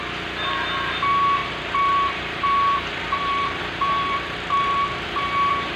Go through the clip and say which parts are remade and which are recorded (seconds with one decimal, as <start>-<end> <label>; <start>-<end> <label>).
0.0-1.4 recorded; 1.4-4.9 remade; 4.9-5.8 recorded